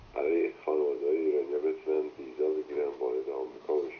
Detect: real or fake real